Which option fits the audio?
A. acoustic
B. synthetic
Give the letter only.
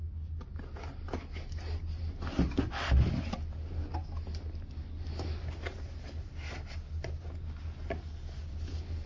A